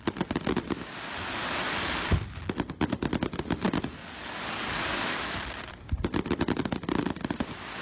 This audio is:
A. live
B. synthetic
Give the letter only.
A